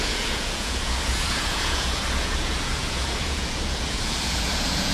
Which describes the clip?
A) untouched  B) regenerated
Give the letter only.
B